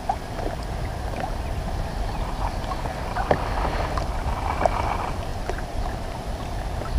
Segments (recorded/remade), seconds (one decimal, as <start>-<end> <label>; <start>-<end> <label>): 0.0-5.3 recorded; 5.3-6.2 remade; 6.2-7.0 recorded